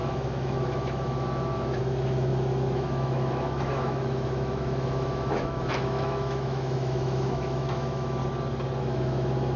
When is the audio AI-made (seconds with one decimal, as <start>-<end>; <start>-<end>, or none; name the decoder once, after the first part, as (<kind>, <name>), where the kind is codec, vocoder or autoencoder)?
0.0-8.2 (autoencoder, DAC-VAE); 8.8-9.6